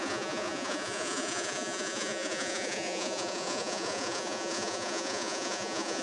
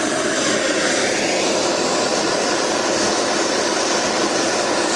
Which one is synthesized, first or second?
first